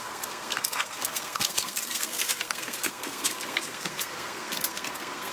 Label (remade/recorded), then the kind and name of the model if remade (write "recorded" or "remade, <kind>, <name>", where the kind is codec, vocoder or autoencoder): remade, codec, SNAC